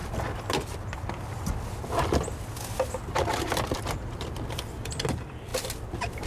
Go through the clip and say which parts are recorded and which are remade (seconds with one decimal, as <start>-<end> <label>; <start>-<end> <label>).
0.0-6.3 recorded